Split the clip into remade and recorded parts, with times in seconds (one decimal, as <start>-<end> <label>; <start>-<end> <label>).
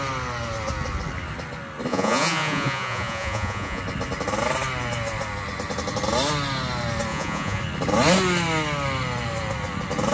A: 0.0-1.9 recorded; 1.9-3.8 remade; 3.8-7.1 recorded; 7.1-7.6 remade; 7.6-10.1 recorded